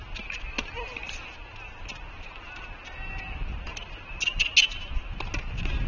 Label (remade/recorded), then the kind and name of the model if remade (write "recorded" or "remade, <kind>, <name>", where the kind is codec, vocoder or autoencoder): recorded